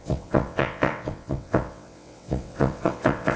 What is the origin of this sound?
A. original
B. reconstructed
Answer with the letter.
B